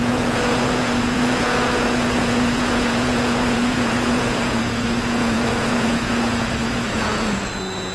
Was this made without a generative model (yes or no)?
no